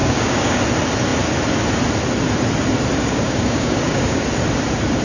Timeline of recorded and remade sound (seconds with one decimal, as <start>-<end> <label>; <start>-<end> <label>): 0.0-0.6 remade; 0.6-3.0 recorded; 3.0-4.2 remade; 4.2-5.0 recorded